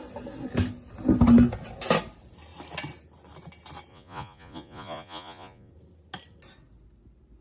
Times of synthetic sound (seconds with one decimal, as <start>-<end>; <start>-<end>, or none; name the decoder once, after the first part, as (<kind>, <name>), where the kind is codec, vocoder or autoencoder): 3.9-5.7 (vocoder, Vocos)